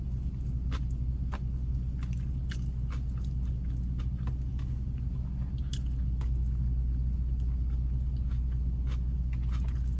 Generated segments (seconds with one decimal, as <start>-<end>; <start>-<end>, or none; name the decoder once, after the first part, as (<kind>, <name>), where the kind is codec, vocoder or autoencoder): none

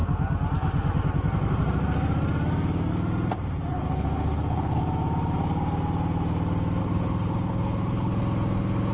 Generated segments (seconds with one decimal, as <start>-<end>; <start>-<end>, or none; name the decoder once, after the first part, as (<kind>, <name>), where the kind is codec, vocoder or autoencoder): 3.7-4.8 (codec, HILCodec); 6.8-8.2